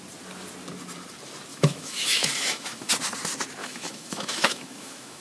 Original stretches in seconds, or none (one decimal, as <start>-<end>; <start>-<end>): 0.0-1.5; 2.9-3.6